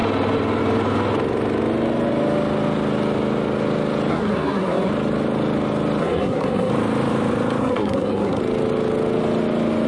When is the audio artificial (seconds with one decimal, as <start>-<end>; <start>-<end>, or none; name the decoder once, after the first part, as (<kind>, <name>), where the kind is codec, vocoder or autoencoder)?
4.1-4.9 (codec, SNAC); 6.0-6.7; 7.6-8.4